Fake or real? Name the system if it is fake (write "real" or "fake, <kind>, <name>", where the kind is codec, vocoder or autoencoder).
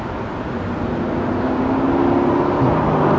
real